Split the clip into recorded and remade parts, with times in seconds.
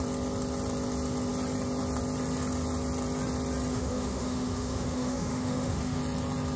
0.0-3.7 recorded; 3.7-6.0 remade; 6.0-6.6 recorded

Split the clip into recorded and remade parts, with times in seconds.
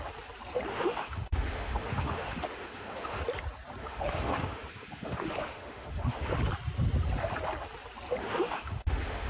0.0-0.7 recorded; 0.7-3.2 remade; 3.2-3.8 recorded; 3.8-6.3 remade; 6.3-8.2 recorded; 8.2-9.3 remade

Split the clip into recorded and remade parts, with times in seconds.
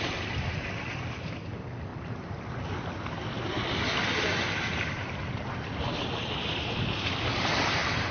0.0-8.1 recorded